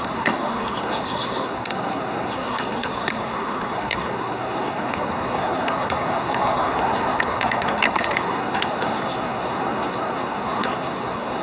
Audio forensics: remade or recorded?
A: remade